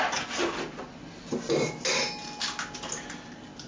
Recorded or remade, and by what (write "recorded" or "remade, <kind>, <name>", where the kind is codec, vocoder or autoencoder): recorded